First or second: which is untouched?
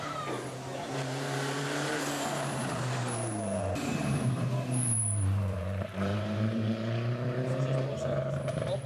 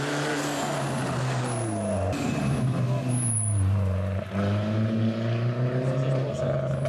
second